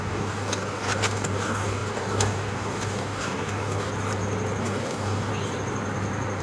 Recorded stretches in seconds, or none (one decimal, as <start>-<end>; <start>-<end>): 3.9-4.6; 5.3-6.4